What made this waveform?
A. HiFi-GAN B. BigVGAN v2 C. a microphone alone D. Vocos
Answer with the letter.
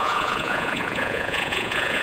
D